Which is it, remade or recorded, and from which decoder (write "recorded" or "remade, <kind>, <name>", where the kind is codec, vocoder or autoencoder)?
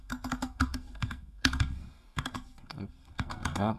remade, codec, SNAC